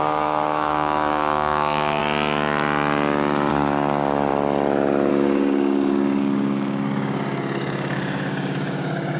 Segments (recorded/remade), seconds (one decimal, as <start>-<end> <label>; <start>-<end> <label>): 0.0-2.0 remade; 2.0-3.5 recorded; 3.5-4.3 remade; 4.3-5.1 recorded; 5.1-9.2 remade